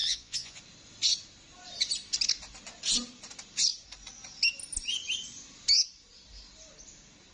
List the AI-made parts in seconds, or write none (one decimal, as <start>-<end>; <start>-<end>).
0.0-0.6